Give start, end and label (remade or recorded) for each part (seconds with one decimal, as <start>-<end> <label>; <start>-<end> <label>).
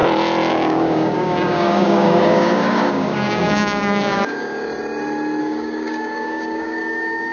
0.0-0.5 recorded; 0.5-4.7 remade; 4.7-5.4 recorded; 5.4-7.3 remade